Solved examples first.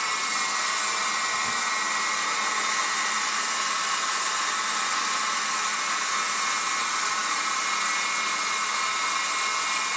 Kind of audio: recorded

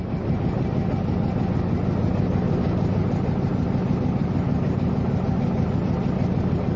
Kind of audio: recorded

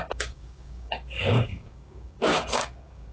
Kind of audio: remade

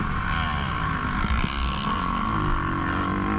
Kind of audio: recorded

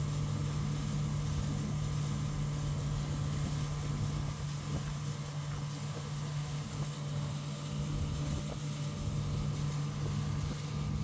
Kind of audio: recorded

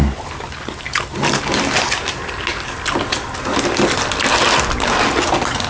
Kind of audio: recorded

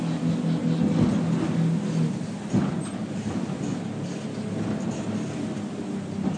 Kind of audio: recorded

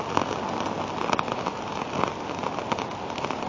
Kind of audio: recorded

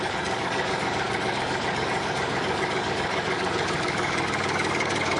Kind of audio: remade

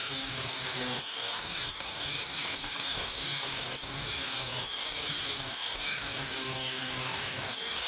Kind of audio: remade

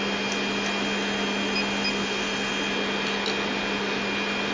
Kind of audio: recorded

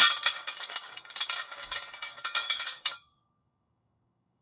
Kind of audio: remade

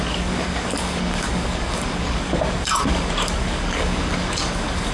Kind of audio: remade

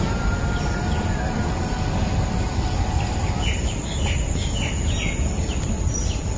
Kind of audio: recorded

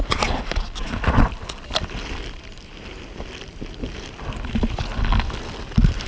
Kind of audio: recorded